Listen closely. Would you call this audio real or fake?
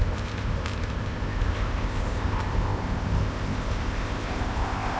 fake